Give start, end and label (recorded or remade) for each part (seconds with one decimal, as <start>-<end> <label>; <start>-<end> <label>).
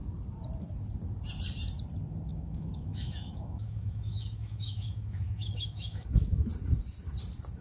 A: 0.0-2.3 recorded; 2.3-6.5 remade; 6.5-7.6 recorded